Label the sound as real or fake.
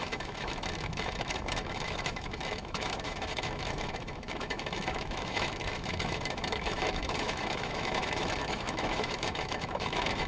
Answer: fake